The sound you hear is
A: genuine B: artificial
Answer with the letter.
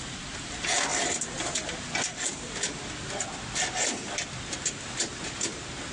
A